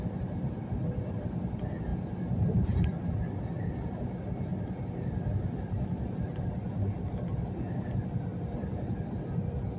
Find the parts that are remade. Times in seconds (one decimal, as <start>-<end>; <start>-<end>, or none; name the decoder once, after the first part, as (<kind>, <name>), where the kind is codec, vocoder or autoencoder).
none